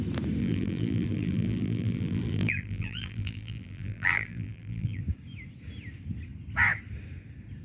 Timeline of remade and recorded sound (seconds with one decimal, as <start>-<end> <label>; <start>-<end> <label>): 0.0-0.4 recorded; 0.4-5.0 remade; 5.0-7.6 recorded